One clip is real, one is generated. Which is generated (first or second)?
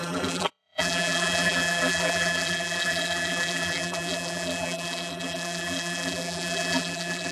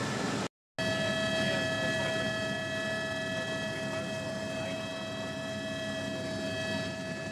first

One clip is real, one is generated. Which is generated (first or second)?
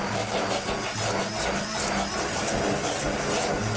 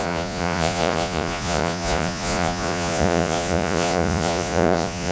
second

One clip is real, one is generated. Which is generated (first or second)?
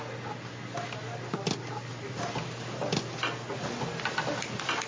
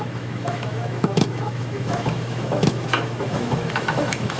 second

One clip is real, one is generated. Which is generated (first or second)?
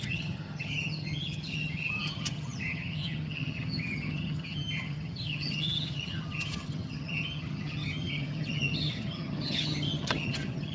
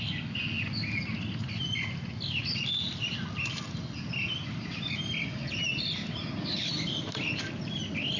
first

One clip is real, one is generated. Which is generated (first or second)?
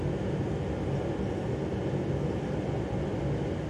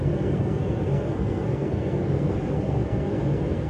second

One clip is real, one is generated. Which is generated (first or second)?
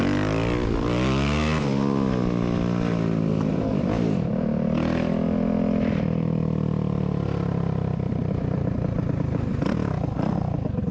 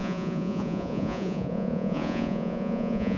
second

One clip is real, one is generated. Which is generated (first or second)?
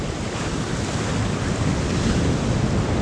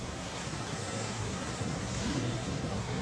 second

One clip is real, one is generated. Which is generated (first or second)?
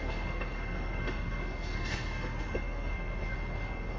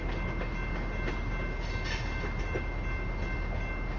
first